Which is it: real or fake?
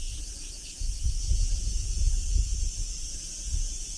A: fake